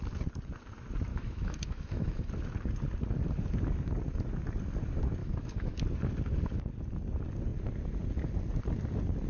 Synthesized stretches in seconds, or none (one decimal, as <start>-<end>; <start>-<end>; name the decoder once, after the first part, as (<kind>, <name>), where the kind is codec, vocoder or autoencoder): 1.1-2.3 (autoencoder, DAC-VAE); 5.2-5.8